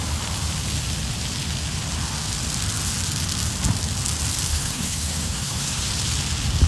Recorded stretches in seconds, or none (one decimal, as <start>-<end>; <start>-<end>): 0.0-4.5; 5.9-6.7

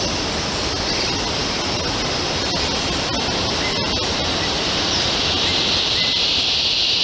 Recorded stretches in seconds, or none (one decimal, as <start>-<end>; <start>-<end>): 0.0-7.0

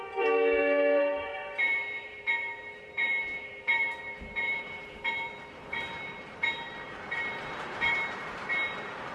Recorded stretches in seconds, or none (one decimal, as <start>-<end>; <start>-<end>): none

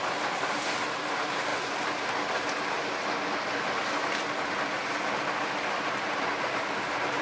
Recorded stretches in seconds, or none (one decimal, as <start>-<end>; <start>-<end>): 1.5-5.8

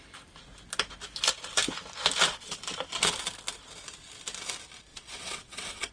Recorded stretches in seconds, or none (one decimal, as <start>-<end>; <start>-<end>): 0.0-4.9

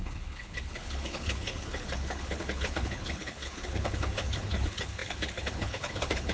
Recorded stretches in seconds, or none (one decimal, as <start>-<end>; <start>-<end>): none

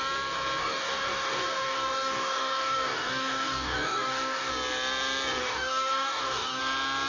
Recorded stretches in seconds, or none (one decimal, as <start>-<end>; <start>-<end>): 0.0-0.6; 4.5-5.4; 6.6-7.1